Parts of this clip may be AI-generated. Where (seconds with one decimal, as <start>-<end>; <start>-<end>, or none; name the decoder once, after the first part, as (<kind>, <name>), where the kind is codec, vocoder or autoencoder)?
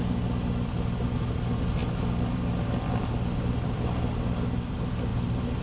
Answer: none